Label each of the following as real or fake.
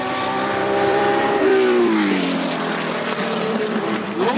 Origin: fake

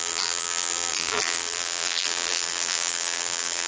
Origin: fake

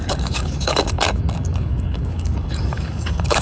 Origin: fake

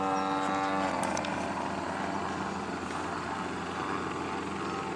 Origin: real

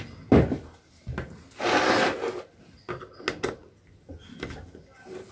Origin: real